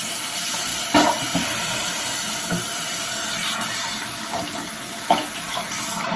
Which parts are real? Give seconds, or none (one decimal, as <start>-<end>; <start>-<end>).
0.0-6.2